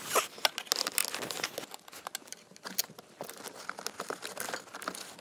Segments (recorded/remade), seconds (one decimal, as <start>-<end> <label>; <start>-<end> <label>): 0.0-5.2 recorded